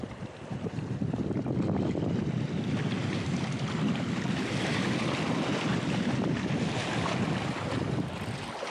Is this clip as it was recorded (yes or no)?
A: yes